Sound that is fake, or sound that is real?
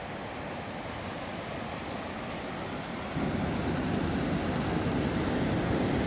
real